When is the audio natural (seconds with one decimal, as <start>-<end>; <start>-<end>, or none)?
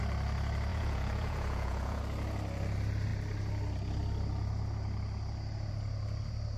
0.0-0.7; 2.0-6.6